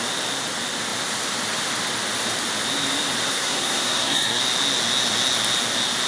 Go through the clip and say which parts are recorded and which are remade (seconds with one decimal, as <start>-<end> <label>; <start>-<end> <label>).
0.0-3.3 recorded; 3.3-4.4 remade; 4.4-6.1 recorded